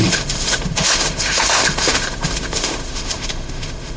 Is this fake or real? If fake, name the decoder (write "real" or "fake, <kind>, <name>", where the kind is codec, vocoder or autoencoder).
fake, autoencoder, DAC-VAE